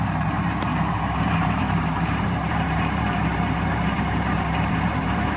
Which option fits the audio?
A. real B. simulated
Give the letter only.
B